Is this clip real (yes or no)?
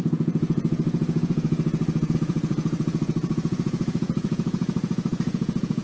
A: no